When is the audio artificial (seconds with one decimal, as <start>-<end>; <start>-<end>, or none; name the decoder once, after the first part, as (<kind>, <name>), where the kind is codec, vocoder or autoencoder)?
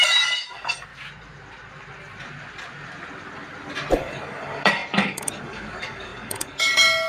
0.0-0.9 (codec, DAC); 3.9-7.1